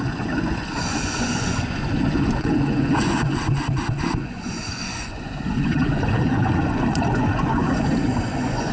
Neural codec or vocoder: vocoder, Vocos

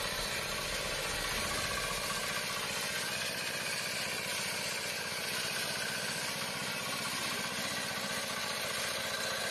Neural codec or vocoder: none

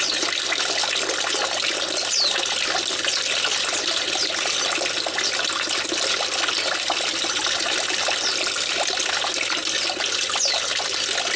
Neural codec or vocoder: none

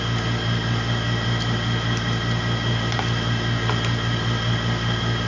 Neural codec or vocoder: none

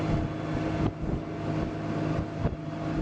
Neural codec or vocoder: none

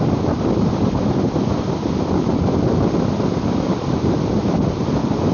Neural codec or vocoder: vocoder, BigVGAN v2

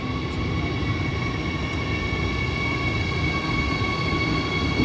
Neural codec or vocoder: none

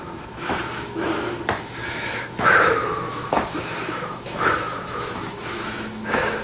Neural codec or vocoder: autoencoder, DAC-VAE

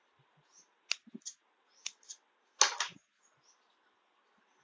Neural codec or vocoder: none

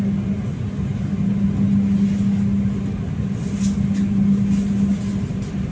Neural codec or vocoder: none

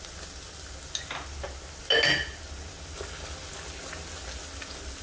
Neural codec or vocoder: none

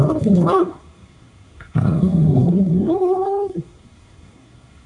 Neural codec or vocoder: codec, SNAC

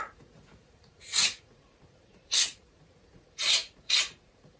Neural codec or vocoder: vocoder, Vocos